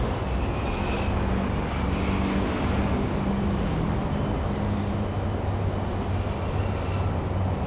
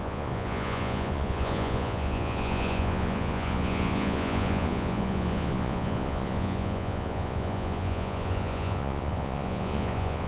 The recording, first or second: first